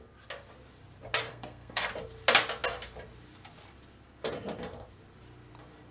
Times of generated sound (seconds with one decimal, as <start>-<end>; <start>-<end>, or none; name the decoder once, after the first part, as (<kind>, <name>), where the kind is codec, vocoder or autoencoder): 1.3-1.9 (codec, SNAC)